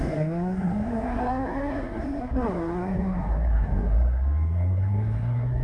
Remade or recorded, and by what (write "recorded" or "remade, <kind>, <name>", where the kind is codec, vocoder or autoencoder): remade, codec, SNAC